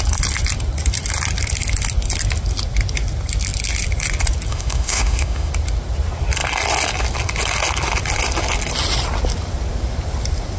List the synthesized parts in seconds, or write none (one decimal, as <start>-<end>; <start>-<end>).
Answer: 4.5-5.5